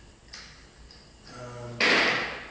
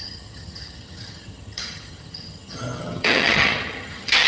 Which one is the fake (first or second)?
second